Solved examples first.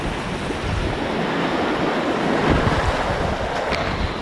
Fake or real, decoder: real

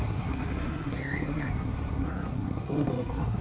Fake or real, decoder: fake, codec, SNAC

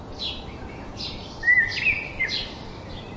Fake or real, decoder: real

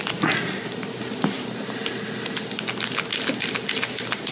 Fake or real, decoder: real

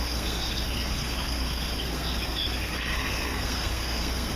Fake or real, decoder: fake, codec, SNAC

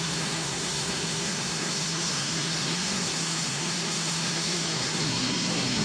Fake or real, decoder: fake, codec, SNAC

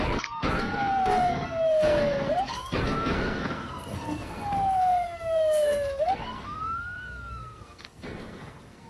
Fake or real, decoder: fake, codec, SNAC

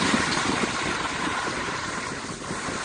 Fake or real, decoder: real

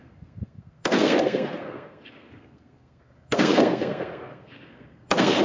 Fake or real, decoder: fake, codec, SNAC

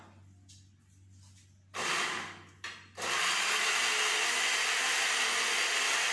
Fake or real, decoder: real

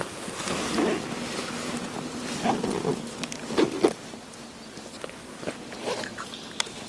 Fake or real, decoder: real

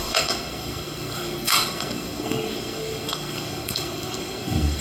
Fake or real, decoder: fake, codec, SNAC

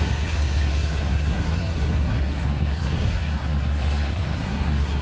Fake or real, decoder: fake, codec, SNAC